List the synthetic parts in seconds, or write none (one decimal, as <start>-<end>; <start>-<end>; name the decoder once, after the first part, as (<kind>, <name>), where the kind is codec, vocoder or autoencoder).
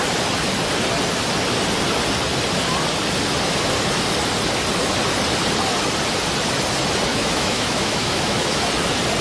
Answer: 7.1-8.6 (autoencoder, DAC-VAE)